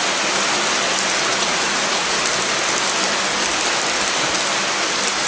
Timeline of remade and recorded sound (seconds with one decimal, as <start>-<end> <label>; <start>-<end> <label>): 0.0-1.3 recorded; 1.3-2.2 remade; 2.2-5.3 recorded